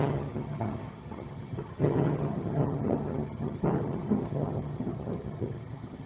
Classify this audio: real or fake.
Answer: fake